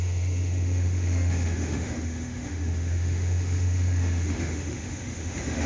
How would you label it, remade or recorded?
remade